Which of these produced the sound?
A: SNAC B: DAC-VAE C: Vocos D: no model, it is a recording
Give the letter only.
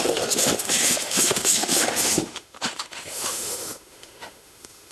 B